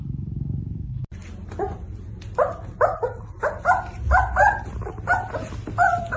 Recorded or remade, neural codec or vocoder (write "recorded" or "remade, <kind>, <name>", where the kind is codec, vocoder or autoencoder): recorded